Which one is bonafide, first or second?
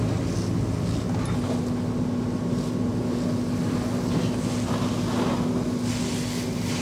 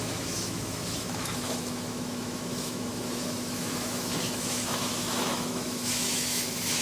first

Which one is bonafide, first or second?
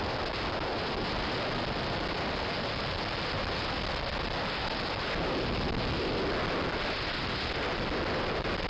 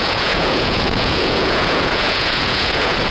first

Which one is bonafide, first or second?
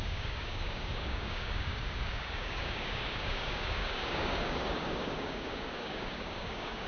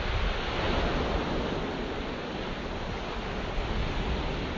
second